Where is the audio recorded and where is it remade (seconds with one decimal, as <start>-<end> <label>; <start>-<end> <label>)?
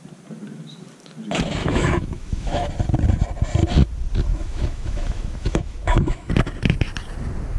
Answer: 0.0-1.6 recorded; 1.6-2.7 remade; 2.7-4.3 recorded; 4.3-6.3 remade; 6.3-7.6 recorded